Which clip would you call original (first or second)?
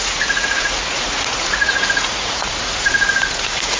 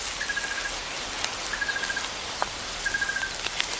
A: second